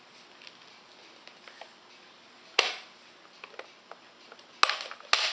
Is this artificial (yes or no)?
no